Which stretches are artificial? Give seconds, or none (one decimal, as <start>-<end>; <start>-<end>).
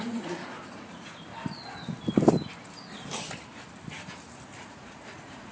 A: 0.0-1.3; 4.6-5.5